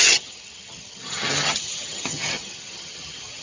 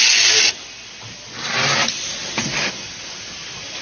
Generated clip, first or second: first